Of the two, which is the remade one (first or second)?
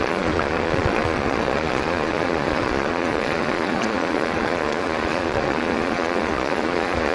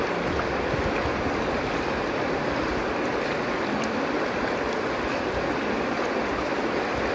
first